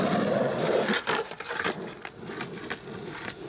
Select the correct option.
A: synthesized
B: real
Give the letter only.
B